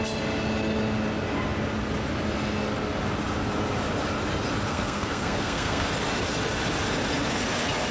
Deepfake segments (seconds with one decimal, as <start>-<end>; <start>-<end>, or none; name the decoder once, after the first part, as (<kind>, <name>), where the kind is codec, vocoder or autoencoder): 4.7-5.9 (codec, SNAC)